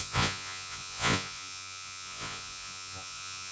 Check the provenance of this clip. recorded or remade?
remade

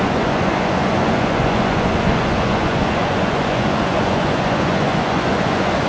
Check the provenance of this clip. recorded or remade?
remade